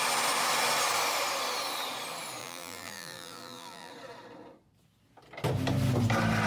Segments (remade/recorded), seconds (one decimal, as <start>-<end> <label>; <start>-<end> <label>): 0.0-2.4 recorded; 2.4-3.9 remade; 3.9-6.5 recorded